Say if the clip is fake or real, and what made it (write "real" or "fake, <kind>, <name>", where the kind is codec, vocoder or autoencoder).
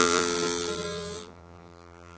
fake, vocoder, BigVGAN v2